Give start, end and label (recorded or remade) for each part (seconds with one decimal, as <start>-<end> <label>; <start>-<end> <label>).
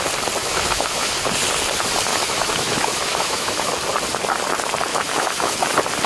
0.0-0.4 recorded; 0.4-1.1 remade; 1.1-2.1 recorded; 2.1-3.7 remade; 3.7-4.9 recorded; 4.9-5.5 remade; 5.5-6.1 recorded